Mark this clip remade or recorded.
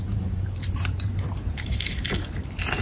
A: remade